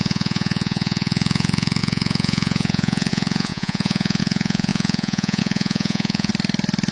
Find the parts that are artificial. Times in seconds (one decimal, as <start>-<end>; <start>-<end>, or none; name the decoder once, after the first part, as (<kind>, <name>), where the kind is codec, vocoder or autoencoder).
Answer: 0.0-6.3 (vocoder, Vocos)